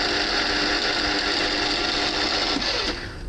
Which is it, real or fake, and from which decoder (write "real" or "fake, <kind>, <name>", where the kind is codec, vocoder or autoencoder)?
real